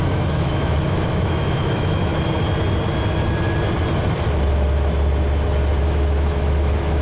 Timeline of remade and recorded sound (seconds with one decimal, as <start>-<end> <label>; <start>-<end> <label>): 0.0-2.1 remade; 2.1-5.8 recorded; 5.8-7.0 remade